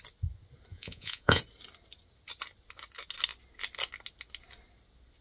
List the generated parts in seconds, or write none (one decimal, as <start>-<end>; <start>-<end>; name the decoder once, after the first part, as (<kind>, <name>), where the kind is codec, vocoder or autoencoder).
0.7-1.4 (vocoder, Vocos)